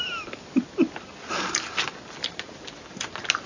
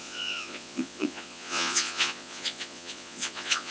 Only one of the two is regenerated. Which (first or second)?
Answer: second